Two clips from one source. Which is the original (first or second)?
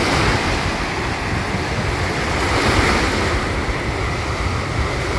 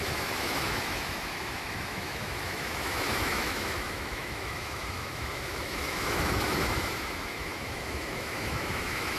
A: first